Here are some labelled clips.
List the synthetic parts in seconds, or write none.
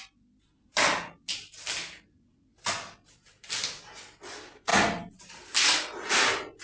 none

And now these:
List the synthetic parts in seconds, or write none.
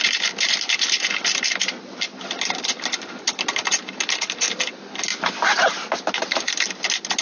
none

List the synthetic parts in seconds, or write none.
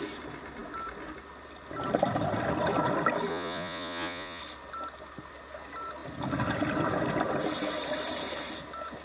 3.3-4.4 (vocoder, Vocos)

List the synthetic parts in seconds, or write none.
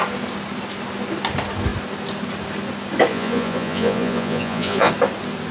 3.1-4.9 (vocoder, Vocos)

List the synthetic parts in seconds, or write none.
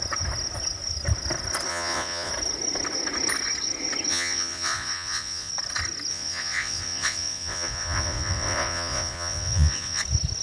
1.7-2.3 (vocoder, Vocos); 4.1-5.5; 6.1-10.0